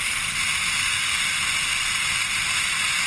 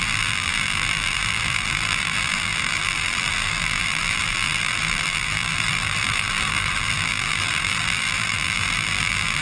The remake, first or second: second